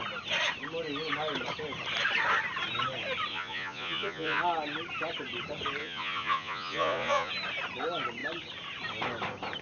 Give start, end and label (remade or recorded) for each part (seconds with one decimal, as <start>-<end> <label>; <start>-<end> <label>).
0.0-3.3 recorded; 3.3-4.4 remade; 4.4-5.8 recorded; 5.8-7.3 remade; 7.3-9.6 recorded